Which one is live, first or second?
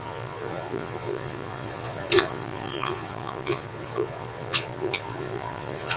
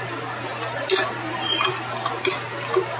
second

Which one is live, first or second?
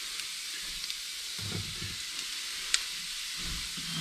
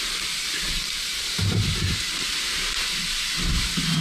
first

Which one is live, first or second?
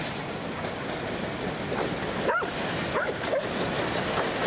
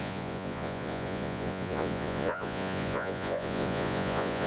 first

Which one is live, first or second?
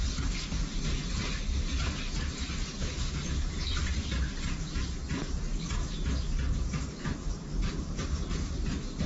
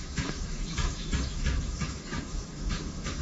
first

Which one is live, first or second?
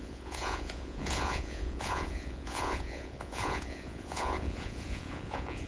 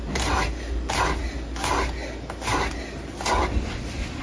second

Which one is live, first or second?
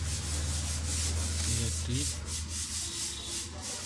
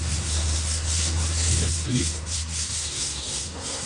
first